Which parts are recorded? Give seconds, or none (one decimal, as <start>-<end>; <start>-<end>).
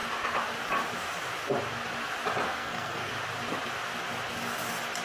0.0-2.5; 3.1-5.0